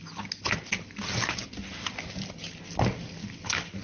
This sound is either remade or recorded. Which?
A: recorded